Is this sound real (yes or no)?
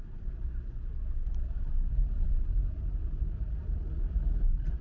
yes